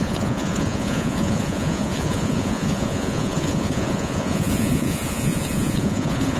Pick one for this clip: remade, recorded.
remade